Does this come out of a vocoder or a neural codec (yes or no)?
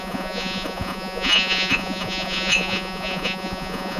yes